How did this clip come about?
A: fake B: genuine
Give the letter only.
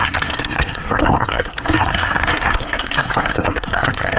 A